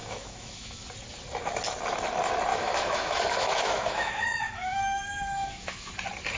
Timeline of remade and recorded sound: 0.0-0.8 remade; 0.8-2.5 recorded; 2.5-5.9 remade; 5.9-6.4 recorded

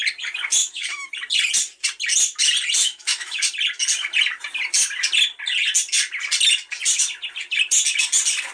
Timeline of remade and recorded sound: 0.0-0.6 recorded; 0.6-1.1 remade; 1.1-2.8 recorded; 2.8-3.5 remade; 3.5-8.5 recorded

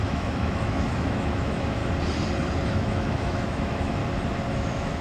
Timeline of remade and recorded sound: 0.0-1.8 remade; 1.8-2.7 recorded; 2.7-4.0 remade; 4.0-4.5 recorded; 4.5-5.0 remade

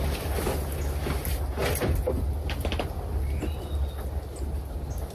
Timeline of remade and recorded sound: 0.0-5.1 recorded

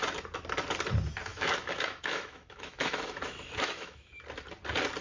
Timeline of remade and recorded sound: 0.0-1.3 recorded; 1.3-4.2 remade; 4.2-5.0 recorded